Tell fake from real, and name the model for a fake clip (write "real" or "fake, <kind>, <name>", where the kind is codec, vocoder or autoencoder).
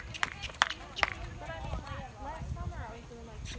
real